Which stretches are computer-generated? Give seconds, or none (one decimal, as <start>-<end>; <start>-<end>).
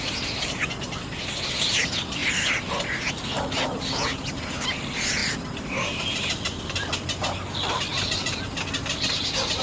none